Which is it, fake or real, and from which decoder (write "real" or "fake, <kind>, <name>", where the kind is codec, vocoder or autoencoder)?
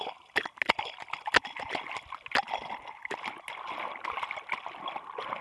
real